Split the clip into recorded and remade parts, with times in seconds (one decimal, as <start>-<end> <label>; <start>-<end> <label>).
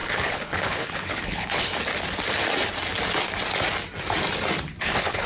0.0-1.7 remade; 1.7-4.8 recorded; 4.8-5.3 remade